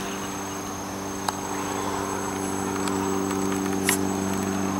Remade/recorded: recorded